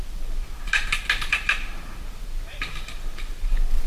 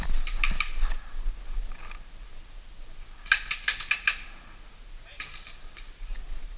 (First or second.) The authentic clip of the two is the second